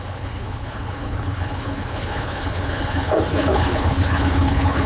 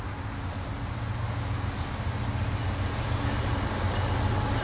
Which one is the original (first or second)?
second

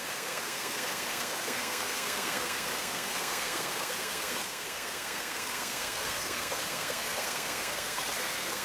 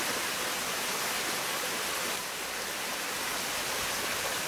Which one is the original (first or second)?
second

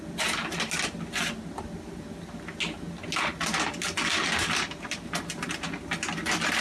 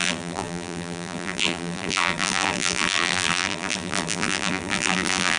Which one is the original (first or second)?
first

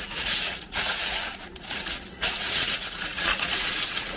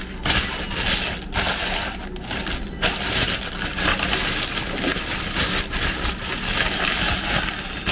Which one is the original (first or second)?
second